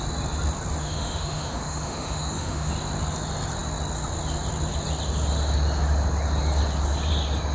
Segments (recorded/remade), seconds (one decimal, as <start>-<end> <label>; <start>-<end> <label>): 0.0-0.8 recorded; 0.8-2.7 remade; 2.7-7.5 recorded